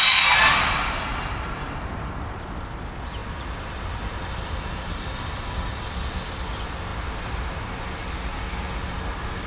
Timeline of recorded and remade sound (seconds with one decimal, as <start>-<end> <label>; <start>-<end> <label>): 0.0-9.5 recorded